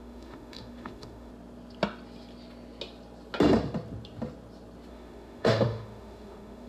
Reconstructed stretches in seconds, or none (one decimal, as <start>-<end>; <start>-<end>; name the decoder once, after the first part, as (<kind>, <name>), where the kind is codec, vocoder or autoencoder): 0.0-1.3 (autoencoder, DAC-VAE); 4.9-6.7